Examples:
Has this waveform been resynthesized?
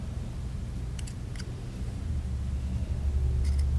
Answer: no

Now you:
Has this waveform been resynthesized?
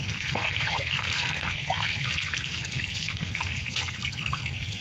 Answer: yes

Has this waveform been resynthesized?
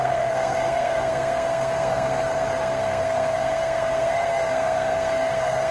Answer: yes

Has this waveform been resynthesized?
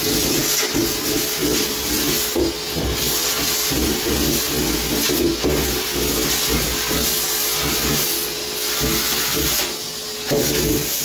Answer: no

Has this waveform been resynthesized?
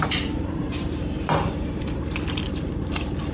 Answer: yes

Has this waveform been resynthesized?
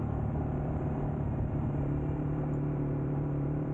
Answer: yes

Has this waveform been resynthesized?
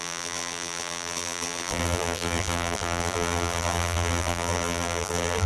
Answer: yes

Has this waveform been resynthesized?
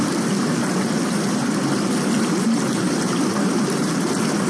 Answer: no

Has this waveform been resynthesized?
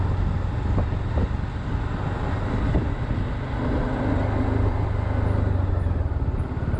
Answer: no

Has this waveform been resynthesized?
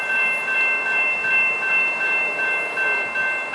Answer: no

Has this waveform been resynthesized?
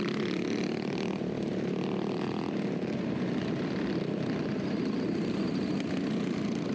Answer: no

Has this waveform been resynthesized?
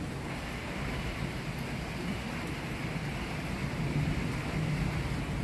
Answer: no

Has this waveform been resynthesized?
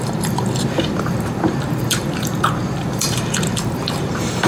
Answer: yes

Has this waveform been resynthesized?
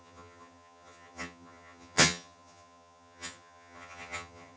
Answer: yes